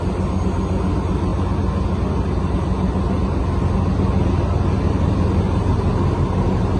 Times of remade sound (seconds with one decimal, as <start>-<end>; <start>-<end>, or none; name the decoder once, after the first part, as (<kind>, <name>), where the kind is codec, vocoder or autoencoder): none